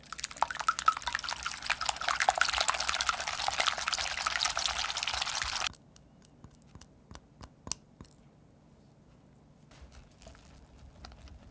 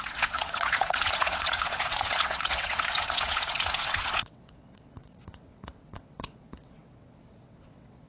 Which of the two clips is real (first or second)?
first